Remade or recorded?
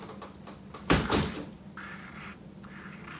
recorded